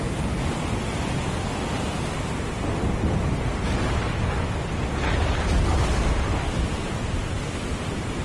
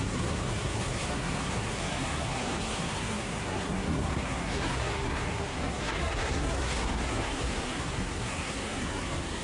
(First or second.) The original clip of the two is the first